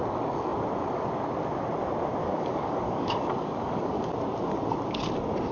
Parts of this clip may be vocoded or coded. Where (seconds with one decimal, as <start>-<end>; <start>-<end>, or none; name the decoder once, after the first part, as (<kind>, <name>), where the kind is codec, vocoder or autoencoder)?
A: 2.2-4.1 (codec, DAC)